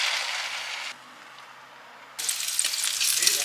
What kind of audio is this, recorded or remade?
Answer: recorded